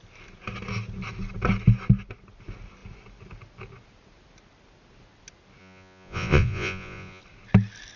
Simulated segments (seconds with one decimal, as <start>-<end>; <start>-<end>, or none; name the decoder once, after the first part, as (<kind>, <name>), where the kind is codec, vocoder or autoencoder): 5.6-7.2 (vocoder, Vocos)